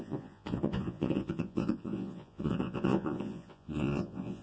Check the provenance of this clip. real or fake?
fake